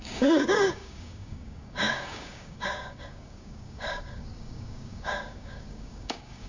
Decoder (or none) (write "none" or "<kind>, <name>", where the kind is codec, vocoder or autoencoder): codec, DAC